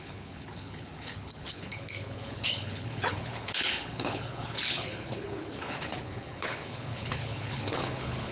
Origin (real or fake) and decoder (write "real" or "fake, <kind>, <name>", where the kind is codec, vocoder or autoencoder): fake, codec, HILCodec